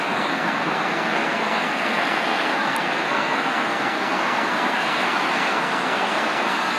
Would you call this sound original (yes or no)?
no